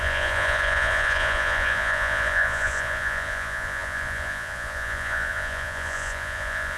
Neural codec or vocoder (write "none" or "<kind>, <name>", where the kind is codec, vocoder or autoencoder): vocoder, Vocos